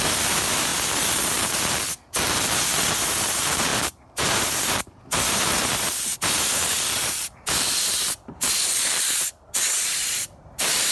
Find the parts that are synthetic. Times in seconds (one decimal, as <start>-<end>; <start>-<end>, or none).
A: 0.0-0.7; 3.0-10.9